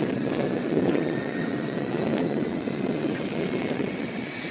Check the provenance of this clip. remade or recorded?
remade